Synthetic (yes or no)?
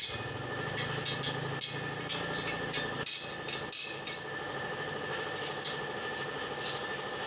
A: no